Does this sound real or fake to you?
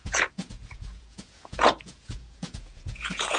fake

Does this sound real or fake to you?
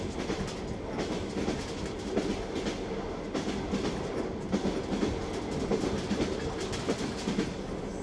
real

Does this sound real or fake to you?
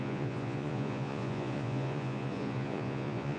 fake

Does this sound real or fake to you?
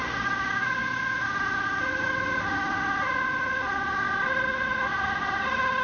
real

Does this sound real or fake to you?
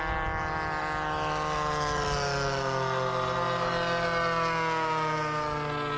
real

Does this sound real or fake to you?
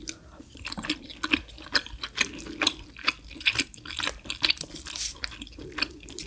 real